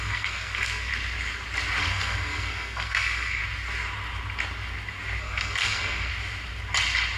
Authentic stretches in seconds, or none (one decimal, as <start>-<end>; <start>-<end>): 0.9-1.8; 3.4-5.2; 6.1-7.2